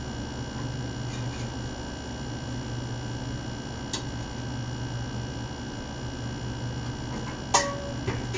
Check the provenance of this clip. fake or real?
real